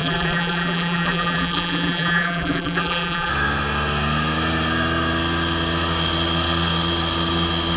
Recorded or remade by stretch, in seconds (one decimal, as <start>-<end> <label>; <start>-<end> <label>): 0.0-3.3 remade; 3.3-7.8 recorded